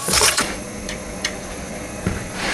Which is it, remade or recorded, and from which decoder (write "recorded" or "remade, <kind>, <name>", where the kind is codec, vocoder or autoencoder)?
remade, vocoder, Vocos